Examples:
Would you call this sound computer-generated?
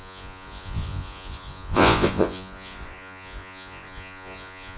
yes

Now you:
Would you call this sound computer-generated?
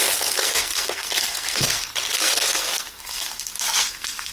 yes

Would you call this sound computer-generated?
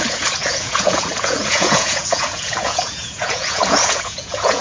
yes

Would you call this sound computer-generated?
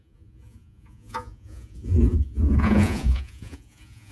yes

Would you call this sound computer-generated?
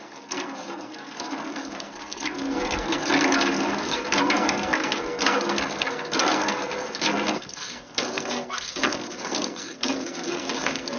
yes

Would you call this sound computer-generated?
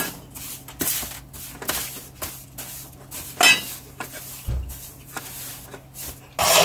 no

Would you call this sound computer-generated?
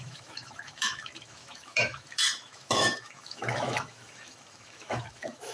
yes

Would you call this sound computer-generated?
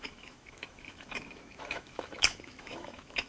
yes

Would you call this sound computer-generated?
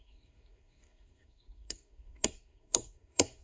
yes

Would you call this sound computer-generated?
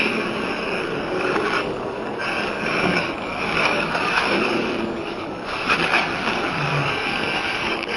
yes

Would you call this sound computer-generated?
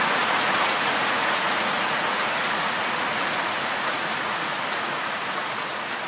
yes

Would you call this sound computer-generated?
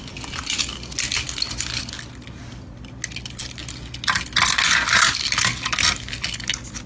no